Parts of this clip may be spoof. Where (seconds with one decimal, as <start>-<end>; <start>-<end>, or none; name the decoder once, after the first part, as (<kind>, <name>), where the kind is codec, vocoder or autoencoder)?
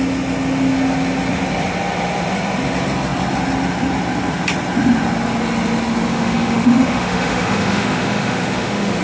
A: 6.1-9.0 (autoencoder, DAC-VAE)